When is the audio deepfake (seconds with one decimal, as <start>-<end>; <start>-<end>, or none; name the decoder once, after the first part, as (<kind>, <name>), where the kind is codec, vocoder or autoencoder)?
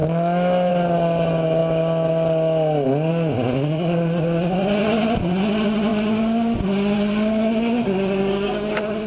0.0-0.7 (autoencoder, DAC-VAE)